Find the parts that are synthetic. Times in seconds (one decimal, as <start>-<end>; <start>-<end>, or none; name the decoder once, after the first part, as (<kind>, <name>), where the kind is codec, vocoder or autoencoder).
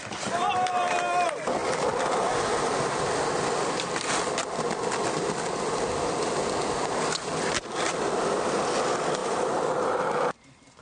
9.2-10.0 (vocoder, BigVGAN v2)